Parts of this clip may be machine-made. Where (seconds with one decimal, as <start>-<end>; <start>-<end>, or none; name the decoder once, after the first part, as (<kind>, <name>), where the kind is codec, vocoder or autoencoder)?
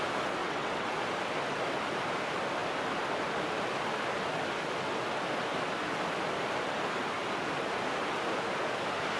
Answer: 0.4-1.0 (vocoder, WaveNeXt)